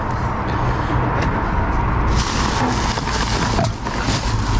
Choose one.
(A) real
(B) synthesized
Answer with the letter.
A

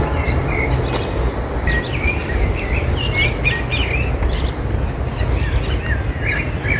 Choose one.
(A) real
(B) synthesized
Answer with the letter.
A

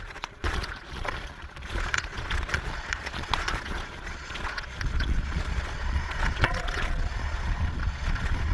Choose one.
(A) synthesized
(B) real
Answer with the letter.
A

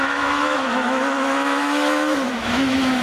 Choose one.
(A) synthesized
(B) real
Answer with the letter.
A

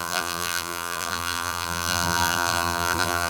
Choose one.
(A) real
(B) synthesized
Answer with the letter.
B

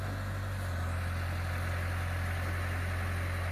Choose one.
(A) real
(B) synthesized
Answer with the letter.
A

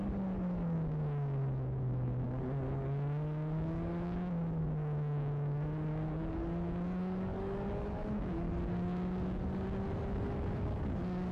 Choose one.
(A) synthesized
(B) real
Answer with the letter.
A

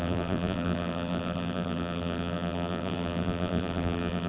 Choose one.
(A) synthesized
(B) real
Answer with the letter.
A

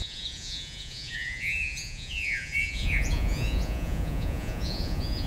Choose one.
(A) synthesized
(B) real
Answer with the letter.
A